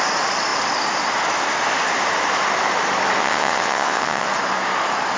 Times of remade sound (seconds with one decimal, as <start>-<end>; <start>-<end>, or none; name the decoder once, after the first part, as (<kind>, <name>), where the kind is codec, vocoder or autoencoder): 3.2-4.3 (vocoder, WaveNeXt)